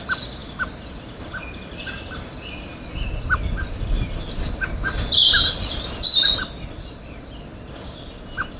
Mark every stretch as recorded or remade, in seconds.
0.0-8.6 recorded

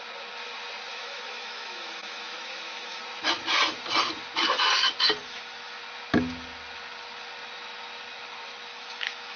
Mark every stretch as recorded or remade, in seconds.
0.0-0.9 recorded; 0.9-3.0 remade; 3.0-5.2 recorded; 5.2-5.8 remade; 5.8-8.7 recorded; 8.7-9.4 remade

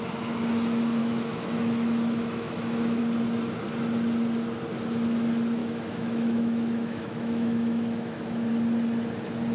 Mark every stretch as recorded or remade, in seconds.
0.0-1.0 recorded; 1.0-3.0 remade; 3.0-5.6 recorded; 5.6-8.5 remade; 8.5-9.5 recorded

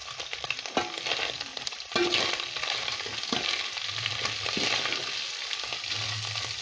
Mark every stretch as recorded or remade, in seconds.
0.0-0.6 remade; 0.6-6.6 recorded

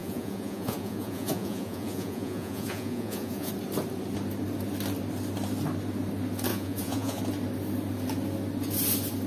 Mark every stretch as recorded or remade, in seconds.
0.0-3.5 remade; 3.5-6.5 recorded; 6.5-7.2 remade; 7.2-9.3 recorded